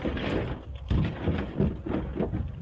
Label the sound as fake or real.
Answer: real